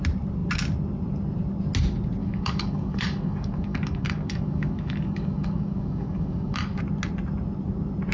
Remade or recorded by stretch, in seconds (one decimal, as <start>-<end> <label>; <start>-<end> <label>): 0.0-2.2 recorded; 2.2-6.8 remade; 6.8-8.1 recorded

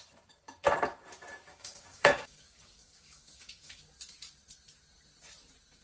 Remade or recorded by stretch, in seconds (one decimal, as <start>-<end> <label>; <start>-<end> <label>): 0.0-1.5 recorded; 1.5-3.8 remade; 3.8-5.8 recorded

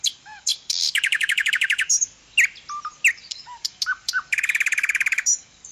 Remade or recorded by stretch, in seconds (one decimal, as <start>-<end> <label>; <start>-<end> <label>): 0.0-2.2 remade; 2.2-3.1 recorded; 3.1-5.7 remade

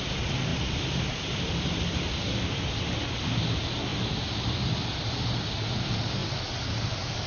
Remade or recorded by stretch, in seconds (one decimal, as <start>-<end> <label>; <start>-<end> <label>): 0.0-7.3 recorded

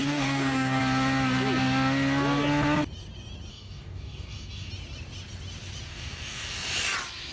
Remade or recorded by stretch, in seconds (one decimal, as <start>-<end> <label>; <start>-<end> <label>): 0.0-0.8 remade; 0.8-3.5 recorded; 3.5-4.7 remade; 4.7-5.9 recorded; 5.9-6.5 remade; 6.5-7.3 recorded

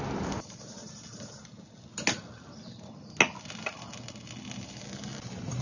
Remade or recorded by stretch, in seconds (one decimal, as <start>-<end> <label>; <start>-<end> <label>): 0.0-5.6 recorded